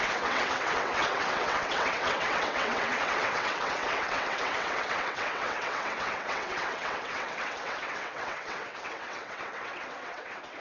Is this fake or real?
fake